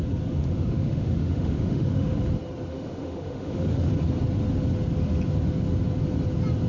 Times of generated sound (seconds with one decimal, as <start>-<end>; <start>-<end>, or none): 0.4-2.2; 2.7-3.9